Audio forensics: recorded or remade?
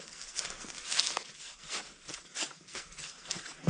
remade